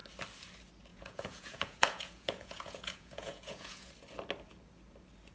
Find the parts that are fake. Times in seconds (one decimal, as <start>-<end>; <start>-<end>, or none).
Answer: 0.9-3.9